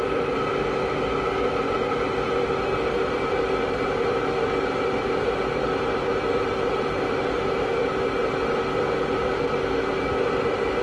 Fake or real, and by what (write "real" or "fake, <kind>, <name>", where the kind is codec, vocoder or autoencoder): real